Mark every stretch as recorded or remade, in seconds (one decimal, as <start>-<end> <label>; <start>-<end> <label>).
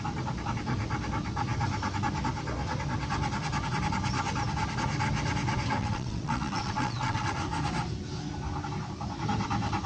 0.0-5.8 recorded; 5.8-7.3 remade; 7.3-9.9 recorded